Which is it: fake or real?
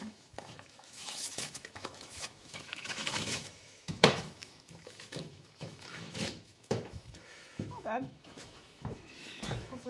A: fake